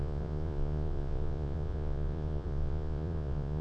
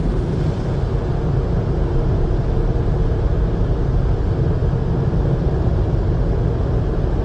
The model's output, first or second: first